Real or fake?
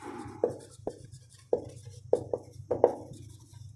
real